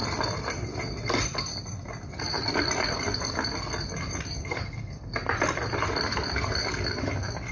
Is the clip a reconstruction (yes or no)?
no